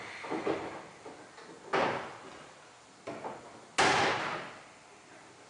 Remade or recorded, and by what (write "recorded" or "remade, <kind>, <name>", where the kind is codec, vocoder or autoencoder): recorded